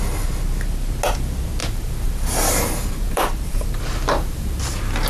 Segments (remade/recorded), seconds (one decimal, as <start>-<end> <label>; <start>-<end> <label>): 0.0-1.6 recorded; 1.6-4.6 remade; 4.6-5.1 recorded